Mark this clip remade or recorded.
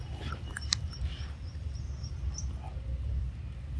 recorded